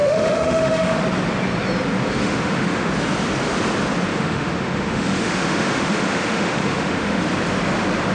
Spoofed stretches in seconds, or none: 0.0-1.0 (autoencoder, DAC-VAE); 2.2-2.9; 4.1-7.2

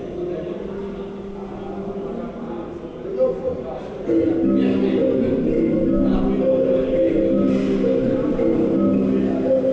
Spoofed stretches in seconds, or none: none

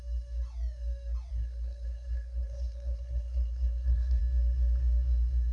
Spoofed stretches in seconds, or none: 1.3-4.2 (codec, SNAC)

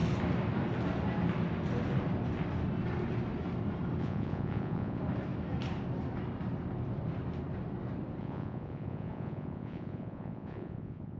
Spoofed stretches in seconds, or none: 4.0-5.0 (vocoder, Vocos); 8.2-11.2

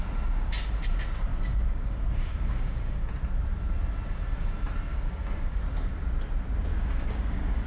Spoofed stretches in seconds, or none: 1.3-3.1 (codec, DAC); 4.9-5.6; 6.7-7.7